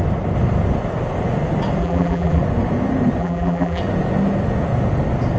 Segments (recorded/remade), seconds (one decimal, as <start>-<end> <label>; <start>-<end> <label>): 0.0-1.8 recorded; 1.8-2.4 remade; 2.4-3.2 recorded; 3.2-3.8 remade; 3.8-5.4 recorded